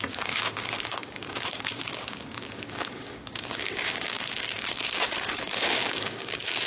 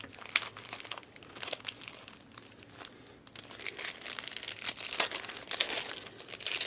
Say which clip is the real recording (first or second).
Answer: second